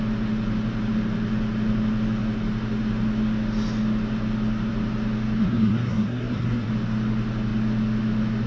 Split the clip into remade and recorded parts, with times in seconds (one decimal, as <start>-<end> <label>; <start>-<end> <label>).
0.0-5.4 recorded; 5.4-6.7 remade; 6.7-8.5 recorded